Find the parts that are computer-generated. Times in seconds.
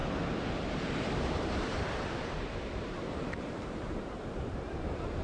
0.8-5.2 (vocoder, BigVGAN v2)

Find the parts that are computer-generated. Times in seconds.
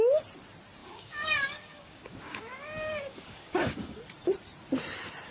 0.8-4.0 (codec, DAC)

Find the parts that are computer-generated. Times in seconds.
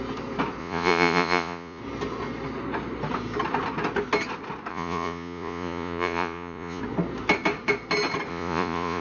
0.6-1.8 (vocoder, Vocos); 4.7-6.8; 8.3-9.0